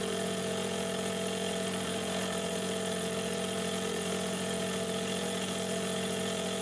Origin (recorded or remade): remade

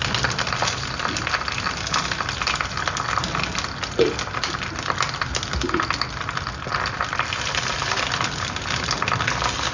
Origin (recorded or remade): recorded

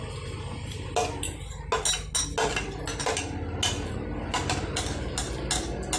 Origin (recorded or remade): recorded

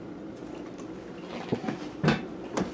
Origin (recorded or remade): recorded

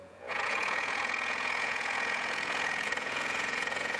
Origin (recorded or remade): remade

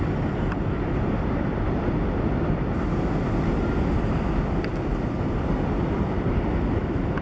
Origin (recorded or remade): recorded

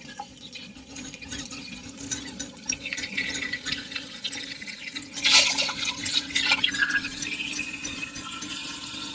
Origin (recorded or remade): remade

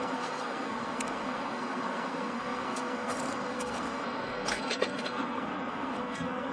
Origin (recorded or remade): remade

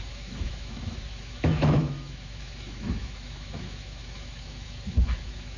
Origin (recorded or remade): remade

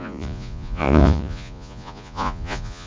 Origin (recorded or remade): remade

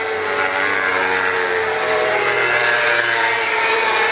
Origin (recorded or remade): recorded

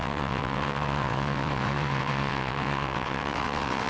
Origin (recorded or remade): remade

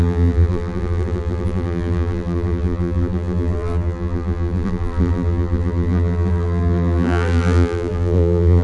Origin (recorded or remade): remade